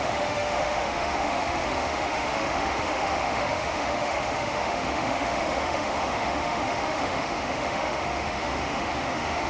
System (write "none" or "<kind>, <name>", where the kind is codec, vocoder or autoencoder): autoencoder, DAC-VAE